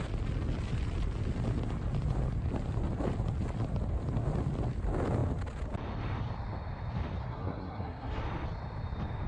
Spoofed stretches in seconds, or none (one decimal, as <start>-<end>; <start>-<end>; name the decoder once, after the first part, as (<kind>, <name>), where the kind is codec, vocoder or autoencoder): 7.2-8.2 (codec, SNAC)